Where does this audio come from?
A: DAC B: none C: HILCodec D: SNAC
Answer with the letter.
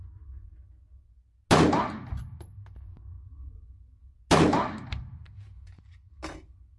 B